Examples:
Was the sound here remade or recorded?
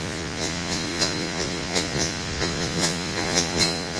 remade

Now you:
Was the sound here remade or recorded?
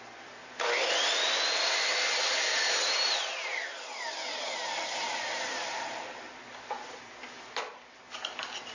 recorded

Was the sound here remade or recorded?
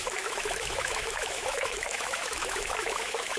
remade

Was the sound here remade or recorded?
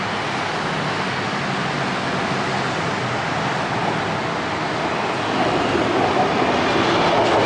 recorded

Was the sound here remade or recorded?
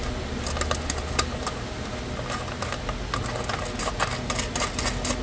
recorded